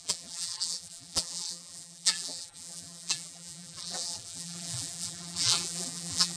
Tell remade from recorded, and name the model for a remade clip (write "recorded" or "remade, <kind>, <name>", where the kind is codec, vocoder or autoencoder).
remade, vocoder, BigVGAN v2